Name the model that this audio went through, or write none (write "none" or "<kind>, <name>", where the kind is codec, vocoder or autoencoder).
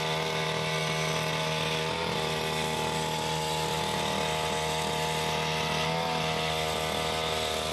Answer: none